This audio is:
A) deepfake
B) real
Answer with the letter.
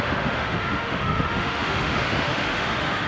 A